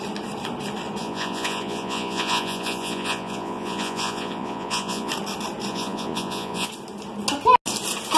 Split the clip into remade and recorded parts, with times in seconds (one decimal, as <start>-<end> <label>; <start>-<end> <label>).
0.0-1.0 recorded; 1.0-5.1 remade; 5.1-5.7 recorded; 5.7-6.7 remade; 6.7-8.2 recorded